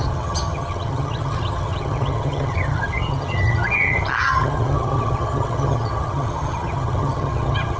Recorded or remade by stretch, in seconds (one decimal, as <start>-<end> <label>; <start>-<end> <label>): 0.0-7.8 remade